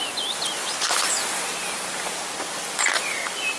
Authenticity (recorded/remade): recorded